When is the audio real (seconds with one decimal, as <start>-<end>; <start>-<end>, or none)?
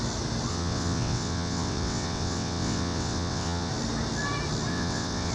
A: 0.0-0.5; 3.7-4.7